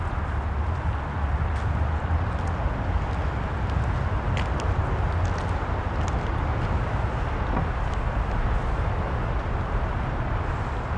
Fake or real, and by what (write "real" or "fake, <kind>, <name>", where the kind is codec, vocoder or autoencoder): real